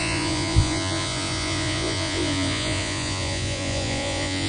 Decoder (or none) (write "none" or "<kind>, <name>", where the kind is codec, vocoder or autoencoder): vocoder, Vocos